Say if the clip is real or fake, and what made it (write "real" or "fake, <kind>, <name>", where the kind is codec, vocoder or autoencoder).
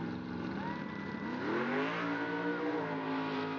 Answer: real